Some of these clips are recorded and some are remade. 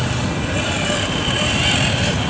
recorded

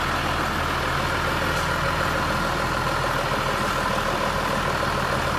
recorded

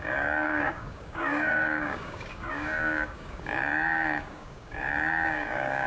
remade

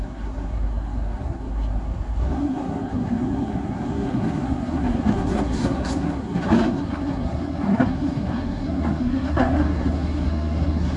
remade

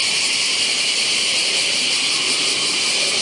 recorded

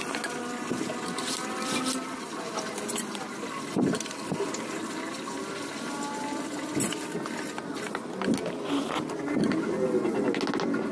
recorded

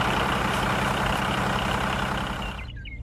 recorded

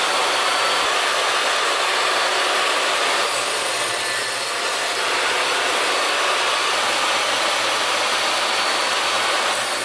recorded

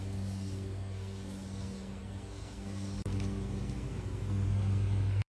remade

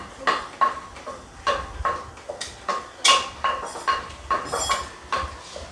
recorded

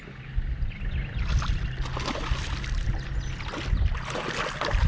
recorded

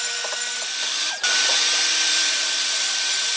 remade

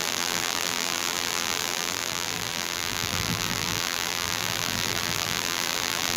remade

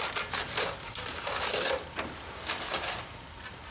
recorded